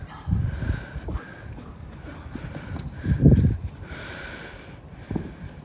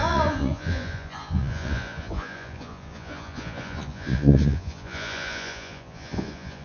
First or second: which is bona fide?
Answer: first